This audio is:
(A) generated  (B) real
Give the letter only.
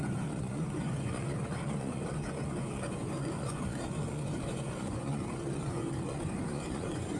A